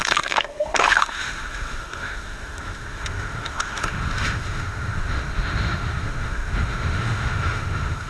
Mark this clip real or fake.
fake